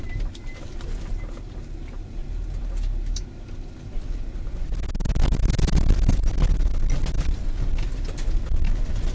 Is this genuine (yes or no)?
yes